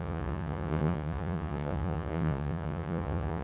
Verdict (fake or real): fake